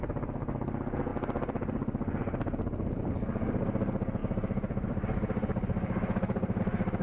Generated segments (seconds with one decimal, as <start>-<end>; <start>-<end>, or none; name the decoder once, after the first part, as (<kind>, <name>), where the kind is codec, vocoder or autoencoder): 1.1-3.1 (vocoder, BigVGAN v2); 4.2-6.6